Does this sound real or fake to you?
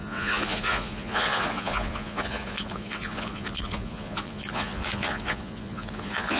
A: fake